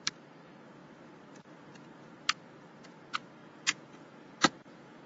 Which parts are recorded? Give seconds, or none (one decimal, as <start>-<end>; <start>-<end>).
0.0-3.4